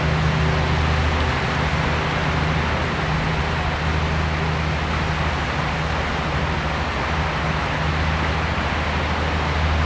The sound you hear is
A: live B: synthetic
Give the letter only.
A